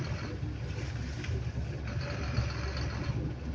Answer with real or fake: real